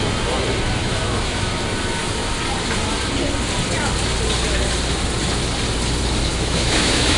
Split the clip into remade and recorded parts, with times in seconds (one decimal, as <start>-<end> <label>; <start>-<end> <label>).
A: 0.0-0.8 recorded; 0.8-1.5 remade; 1.5-6.3 recorded; 6.3-7.2 remade